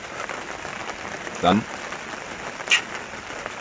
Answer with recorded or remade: recorded